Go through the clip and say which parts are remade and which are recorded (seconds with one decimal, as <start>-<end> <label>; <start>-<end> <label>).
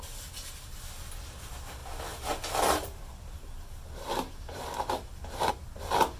0.0-1.8 recorded; 1.8-5.5 remade; 5.5-6.2 recorded